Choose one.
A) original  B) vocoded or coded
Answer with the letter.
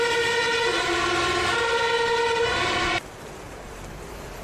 B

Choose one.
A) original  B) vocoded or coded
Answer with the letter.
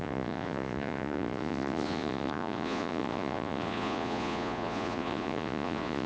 B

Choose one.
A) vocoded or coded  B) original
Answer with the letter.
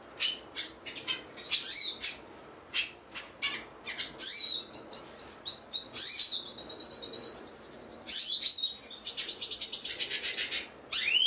B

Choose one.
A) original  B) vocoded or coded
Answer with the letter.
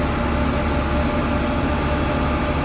A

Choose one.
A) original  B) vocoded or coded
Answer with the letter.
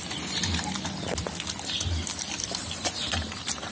B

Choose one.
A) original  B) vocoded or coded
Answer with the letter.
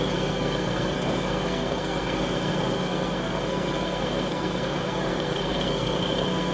B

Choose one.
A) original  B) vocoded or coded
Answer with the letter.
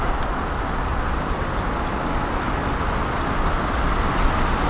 A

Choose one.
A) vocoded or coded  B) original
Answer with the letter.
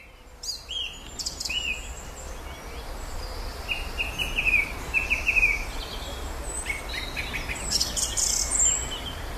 A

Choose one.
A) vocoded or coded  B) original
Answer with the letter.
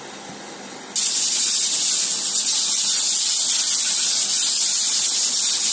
B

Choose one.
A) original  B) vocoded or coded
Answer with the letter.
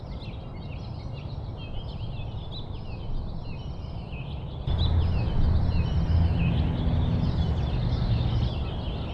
A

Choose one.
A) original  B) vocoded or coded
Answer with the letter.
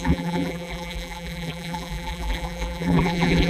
B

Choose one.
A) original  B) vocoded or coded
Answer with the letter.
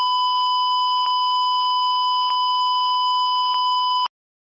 A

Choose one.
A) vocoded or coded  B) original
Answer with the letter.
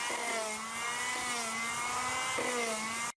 B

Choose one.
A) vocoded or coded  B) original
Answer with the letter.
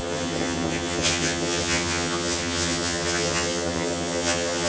A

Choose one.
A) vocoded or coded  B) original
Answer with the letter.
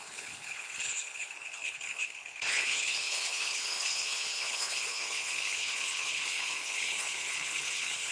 A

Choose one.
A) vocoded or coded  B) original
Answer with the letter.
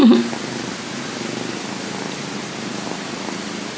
B